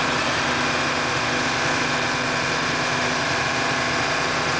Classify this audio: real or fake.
real